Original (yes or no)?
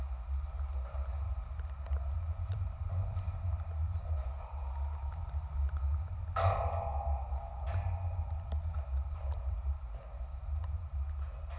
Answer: yes